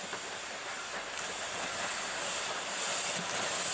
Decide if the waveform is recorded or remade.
recorded